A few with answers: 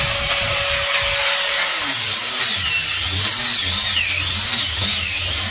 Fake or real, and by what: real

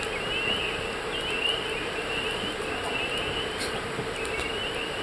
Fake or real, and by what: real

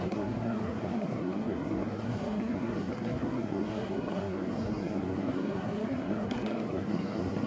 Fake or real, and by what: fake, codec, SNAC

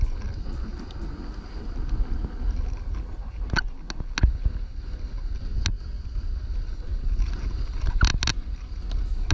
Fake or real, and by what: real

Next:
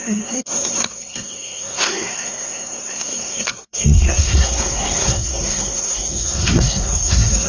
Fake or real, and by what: fake, codec, SNAC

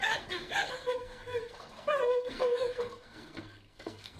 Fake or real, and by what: fake, codec, SNAC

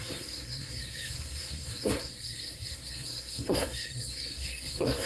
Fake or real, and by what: fake, codec, SNAC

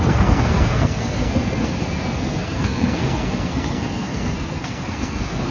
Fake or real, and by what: fake, codec, SNAC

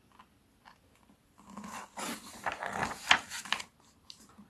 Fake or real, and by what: real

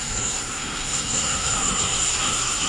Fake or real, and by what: fake, codec, SNAC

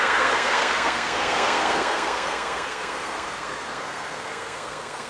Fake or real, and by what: fake, codec, SNAC